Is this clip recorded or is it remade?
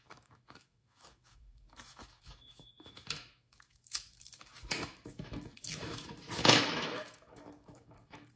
remade